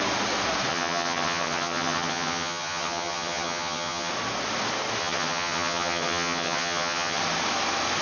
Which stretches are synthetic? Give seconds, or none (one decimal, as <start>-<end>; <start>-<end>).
0.7-4.1; 5.0-7.2